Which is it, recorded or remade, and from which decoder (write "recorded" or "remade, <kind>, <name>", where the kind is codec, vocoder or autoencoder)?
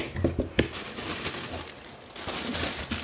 recorded